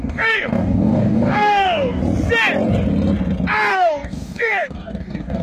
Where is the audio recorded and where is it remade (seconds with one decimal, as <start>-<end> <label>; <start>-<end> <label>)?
0.0-2.0 remade; 2.0-3.7 recorded; 3.7-5.4 remade